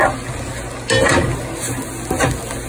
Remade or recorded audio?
recorded